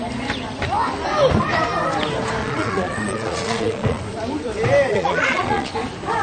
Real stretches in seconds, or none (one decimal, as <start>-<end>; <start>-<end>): 0.0-2.4; 4.0-4.9; 5.7-6.2